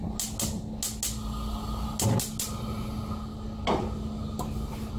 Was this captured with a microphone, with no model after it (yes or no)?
yes